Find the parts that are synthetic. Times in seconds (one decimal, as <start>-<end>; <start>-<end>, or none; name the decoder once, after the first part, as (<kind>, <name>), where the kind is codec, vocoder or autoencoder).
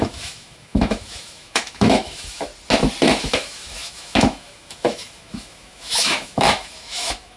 0.0-2.5 (autoencoder, DAC-VAE); 3.2-7.4